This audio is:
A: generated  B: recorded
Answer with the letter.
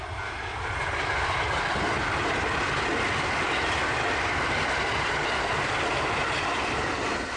B